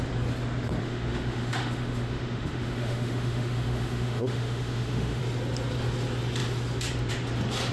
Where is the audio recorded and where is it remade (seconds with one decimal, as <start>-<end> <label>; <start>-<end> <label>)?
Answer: 0.0-0.8 recorded; 0.8-5.2 remade; 5.2-7.7 recorded

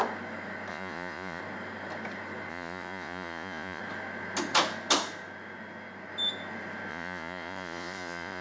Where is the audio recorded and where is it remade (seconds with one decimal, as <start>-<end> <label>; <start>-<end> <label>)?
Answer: 0.0-0.7 recorded; 0.7-1.4 remade; 1.4-2.5 recorded; 2.5-3.8 remade; 3.8-6.9 recorded; 6.9-8.4 remade

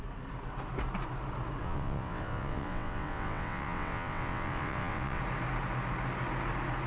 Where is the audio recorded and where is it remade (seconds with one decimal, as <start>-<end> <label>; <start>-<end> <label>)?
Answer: 0.0-1.6 recorded; 1.6-5.2 remade; 5.2-6.9 recorded